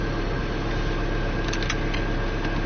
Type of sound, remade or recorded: recorded